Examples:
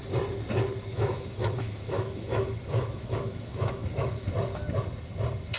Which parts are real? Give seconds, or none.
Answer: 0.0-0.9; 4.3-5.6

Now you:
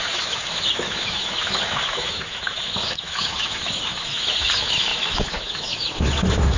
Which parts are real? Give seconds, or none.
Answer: none

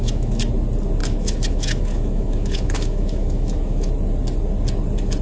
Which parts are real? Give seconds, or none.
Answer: 0.5-1.0; 3.9-5.2